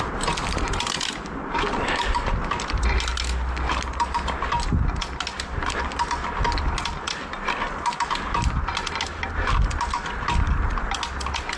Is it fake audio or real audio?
real